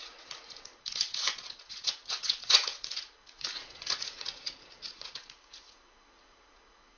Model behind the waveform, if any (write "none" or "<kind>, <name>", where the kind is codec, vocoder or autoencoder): vocoder, Vocos